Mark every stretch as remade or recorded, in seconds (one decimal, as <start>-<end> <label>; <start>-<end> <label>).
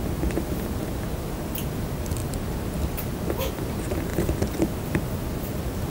0.0-5.9 recorded